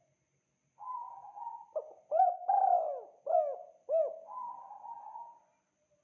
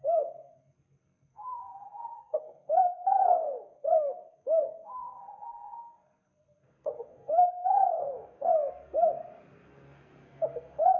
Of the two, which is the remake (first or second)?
second